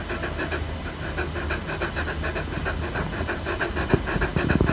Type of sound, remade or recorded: recorded